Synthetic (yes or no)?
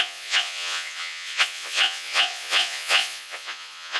yes